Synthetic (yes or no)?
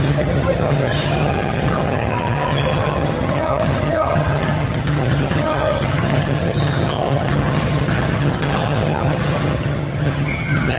yes